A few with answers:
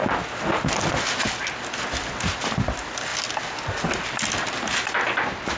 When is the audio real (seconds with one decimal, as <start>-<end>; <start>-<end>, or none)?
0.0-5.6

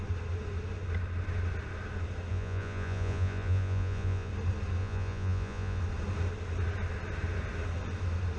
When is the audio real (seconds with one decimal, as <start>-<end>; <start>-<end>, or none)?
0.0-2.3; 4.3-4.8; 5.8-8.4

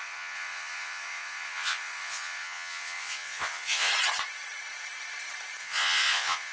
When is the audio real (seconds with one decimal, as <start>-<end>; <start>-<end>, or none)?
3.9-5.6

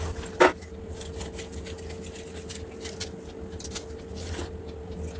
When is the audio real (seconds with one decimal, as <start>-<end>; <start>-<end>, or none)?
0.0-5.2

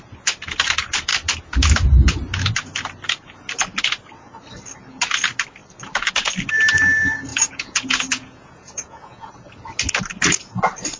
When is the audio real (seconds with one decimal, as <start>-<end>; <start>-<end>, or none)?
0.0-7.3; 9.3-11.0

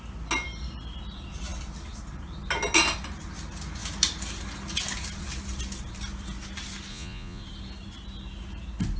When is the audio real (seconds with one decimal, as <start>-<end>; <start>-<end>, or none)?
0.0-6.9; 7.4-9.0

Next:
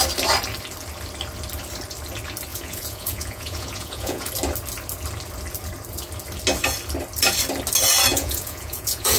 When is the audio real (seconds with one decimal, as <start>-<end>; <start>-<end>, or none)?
0.0-2.5; 4.3-8.1

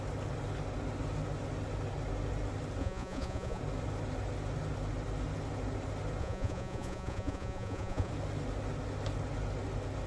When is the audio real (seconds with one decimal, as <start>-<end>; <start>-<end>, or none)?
0.0-2.8; 3.6-6.2; 8.1-10.1